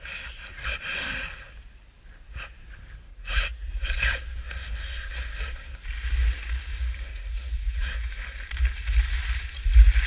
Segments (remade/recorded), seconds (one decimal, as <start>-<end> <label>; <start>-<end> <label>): 0.0-3.1 recorded; 3.1-3.7 remade; 3.7-7.1 recorded; 7.1-8.1 remade; 8.1-10.1 recorded